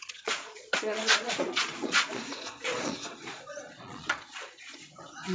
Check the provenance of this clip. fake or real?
fake